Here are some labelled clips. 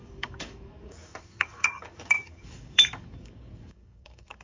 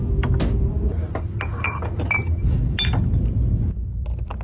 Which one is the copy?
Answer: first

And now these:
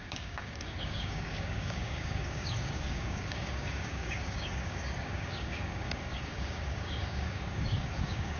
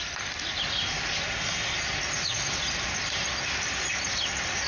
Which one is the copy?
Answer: first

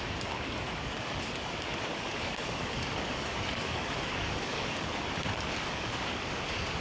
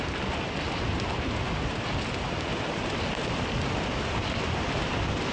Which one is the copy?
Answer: first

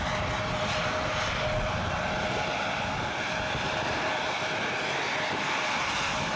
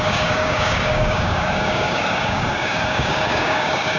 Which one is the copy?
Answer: second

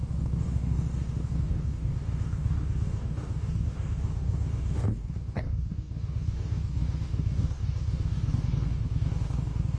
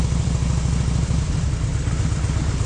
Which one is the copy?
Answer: first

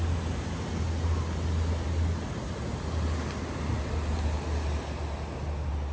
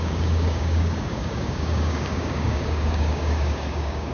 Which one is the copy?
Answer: second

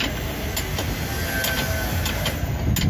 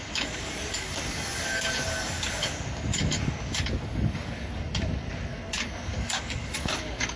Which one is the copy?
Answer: second